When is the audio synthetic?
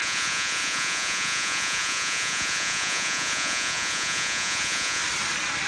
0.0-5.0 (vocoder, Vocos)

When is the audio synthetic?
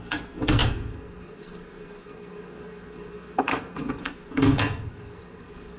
0.0-5.8 (codec, SNAC)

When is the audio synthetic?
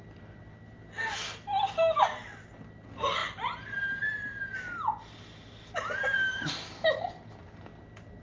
none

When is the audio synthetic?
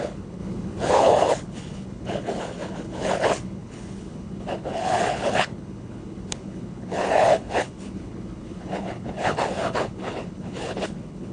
0.0-11.3 (codec, HILCodec)